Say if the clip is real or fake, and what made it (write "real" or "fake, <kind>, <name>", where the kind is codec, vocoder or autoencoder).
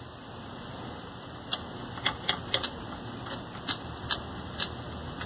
real